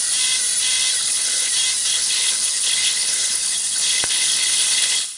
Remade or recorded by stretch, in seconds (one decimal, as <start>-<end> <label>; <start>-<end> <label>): 0.0-1.0 recorded; 1.0-1.5 remade; 1.5-1.9 recorded; 1.9-5.2 remade